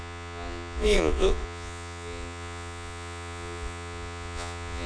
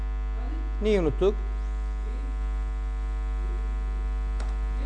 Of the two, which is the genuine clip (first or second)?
second